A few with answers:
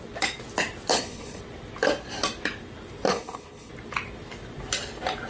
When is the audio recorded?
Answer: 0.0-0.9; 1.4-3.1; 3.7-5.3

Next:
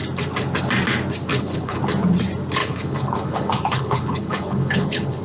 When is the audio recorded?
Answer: 0.0-1.3; 1.8-2.6